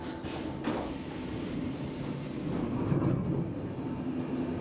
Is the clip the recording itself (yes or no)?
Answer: yes